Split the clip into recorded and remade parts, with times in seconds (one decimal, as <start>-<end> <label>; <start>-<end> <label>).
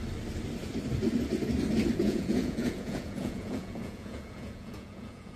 0.0-2.0 recorded; 2.0-5.4 remade